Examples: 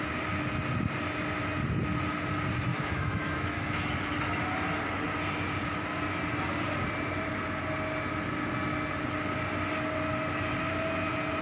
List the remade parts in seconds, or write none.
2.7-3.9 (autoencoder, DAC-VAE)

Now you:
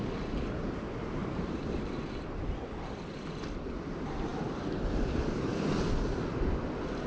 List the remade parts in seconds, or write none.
none